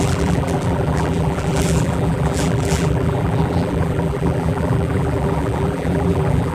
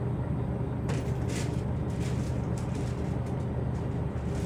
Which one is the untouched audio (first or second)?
second